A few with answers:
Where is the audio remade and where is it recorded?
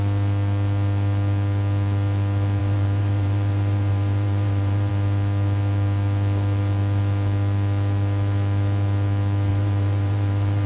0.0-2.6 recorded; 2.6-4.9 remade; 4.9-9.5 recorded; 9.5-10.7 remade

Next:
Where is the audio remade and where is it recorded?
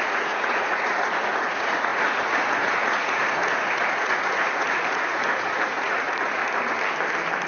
0.0-6.4 remade; 6.4-7.5 recorded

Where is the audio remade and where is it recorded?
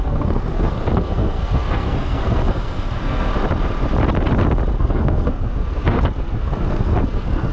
0.0-3.3 remade; 3.3-4.8 recorded; 4.8-7.5 remade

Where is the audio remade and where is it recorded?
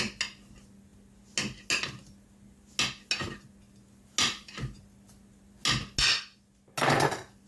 0.0-7.5 recorded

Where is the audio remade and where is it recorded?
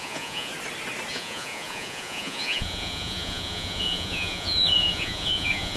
0.0-0.5 remade; 0.5-1.1 recorded; 1.1-5.8 remade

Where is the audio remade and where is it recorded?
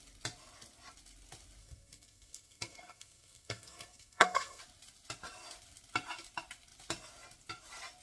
0.0-1.6 recorded; 1.6-4.6 remade; 4.6-8.0 recorded